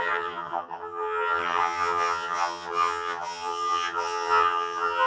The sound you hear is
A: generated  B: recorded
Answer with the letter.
A